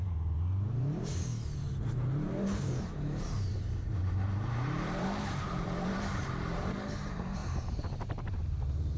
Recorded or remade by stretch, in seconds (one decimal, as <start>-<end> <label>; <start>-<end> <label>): 0.0-1.3 remade; 1.3-2.1 recorded; 2.1-7.4 remade; 7.4-8.1 recorded; 8.1-9.0 remade